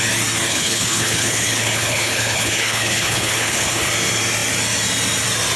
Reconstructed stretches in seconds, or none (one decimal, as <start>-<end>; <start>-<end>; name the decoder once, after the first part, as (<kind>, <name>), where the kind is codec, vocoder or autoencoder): 0.5-3.9 (codec, HILCodec)